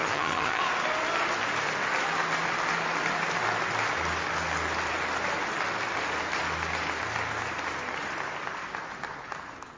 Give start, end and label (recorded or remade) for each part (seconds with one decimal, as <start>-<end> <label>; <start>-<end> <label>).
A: 0.0-0.6 remade; 0.6-9.8 recorded

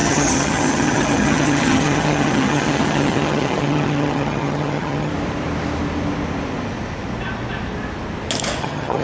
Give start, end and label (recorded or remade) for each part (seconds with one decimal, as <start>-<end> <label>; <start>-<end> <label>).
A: 0.0-5.1 remade; 5.1-8.6 recorded; 8.6-9.0 remade